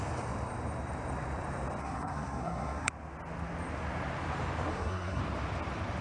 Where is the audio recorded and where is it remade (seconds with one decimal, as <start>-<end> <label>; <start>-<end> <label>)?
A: 0.0-1.8 recorded; 1.8-2.9 remade; 2.9-4.7 recorded; 4.7-5.2 remade; 5.2-6.0 recorded